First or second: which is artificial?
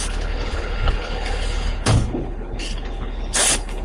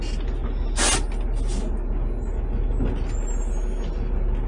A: first